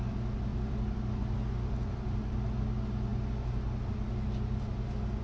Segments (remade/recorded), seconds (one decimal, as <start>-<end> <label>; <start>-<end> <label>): 0.0-0.5 recorded; 0.5-1.2 remade; 1.2-5.2 recorded